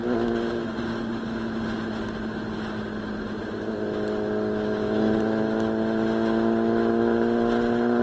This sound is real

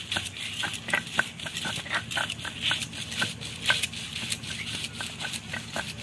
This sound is real